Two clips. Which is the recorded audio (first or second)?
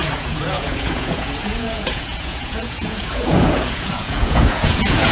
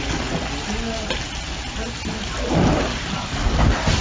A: second